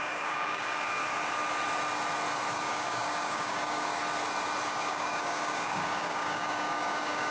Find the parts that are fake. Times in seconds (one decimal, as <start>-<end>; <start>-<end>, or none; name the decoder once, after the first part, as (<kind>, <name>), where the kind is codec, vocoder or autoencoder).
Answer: 0.0-1.0 (codec, DAC); 2.5-4.0; 4.7-7.3